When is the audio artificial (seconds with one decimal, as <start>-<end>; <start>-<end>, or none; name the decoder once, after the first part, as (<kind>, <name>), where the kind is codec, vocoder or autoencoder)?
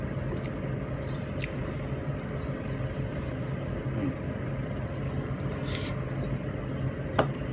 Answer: none